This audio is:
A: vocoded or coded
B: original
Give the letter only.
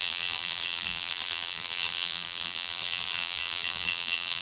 A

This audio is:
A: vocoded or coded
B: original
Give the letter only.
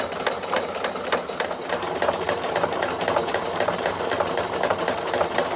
A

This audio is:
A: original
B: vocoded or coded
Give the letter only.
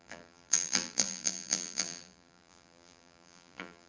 B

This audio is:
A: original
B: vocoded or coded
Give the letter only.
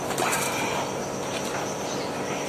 A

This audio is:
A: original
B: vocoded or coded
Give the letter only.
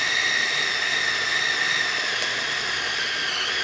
A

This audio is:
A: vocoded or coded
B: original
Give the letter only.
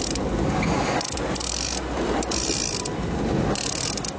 B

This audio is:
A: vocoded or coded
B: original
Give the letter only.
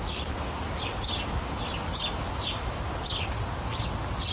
B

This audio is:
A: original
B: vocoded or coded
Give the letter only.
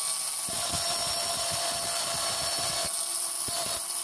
A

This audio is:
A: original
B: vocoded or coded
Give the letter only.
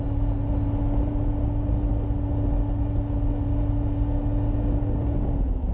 A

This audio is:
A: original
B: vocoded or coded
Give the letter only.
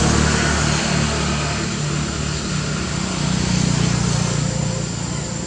A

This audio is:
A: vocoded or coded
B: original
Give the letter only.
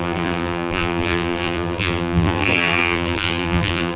A